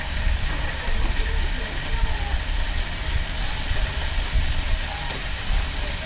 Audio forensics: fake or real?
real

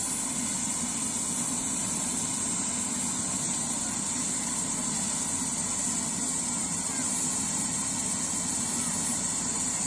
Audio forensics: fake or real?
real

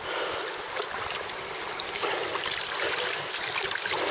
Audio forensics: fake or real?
real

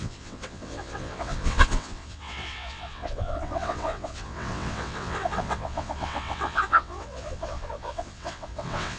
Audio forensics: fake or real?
fake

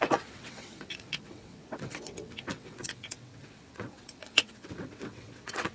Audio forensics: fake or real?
fake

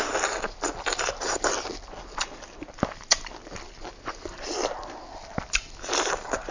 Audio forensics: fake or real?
real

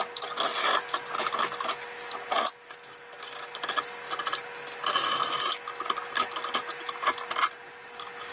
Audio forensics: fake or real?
real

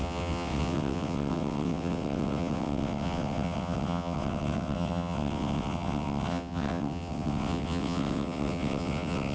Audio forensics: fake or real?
fake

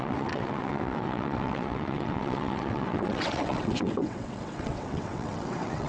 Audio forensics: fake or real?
fake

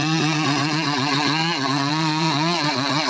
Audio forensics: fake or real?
fake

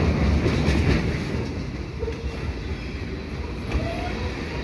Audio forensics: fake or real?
real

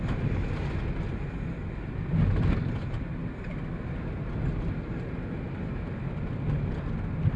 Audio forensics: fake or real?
real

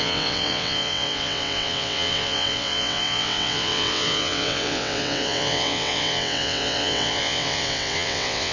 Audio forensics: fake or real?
fake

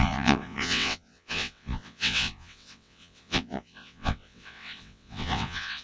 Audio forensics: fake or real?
fake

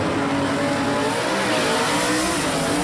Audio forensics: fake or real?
real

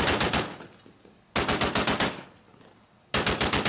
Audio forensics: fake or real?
real